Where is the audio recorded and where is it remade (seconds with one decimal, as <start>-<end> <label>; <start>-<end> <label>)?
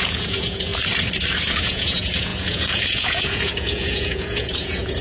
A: 0.0-0.7 remade; 0.7-1.6 recorded; 1.6-5.0 remade